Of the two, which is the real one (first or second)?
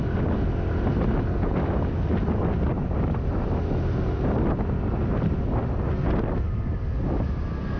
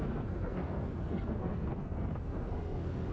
first